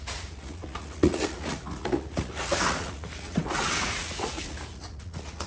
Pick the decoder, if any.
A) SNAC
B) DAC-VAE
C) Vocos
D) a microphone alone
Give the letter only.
C